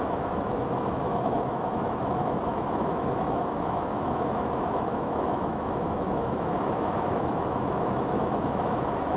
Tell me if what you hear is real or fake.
fake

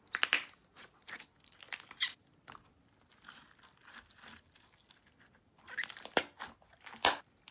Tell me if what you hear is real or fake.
real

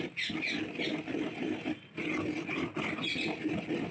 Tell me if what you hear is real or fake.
real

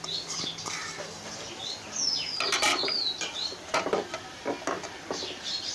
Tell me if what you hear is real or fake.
real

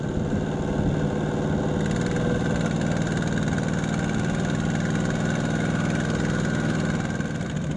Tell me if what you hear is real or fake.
real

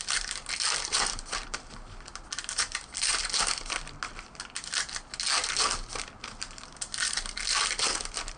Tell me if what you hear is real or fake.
real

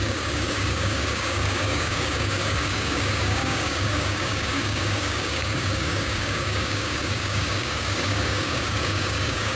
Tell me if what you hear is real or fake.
fake